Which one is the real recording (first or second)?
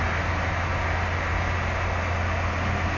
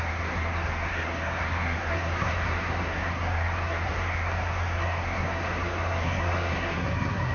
first